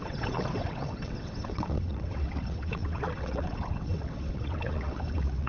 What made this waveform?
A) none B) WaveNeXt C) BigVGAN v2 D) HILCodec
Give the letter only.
B